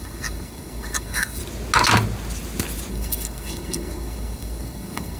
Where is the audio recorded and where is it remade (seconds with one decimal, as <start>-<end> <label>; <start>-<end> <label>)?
0.0-1.4 remade; 1.4-2.9 recorded; 2.9-5.2 remade